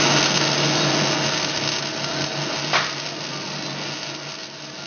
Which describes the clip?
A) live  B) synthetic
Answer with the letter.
A